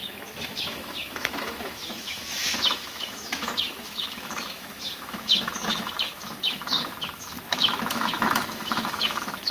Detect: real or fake fake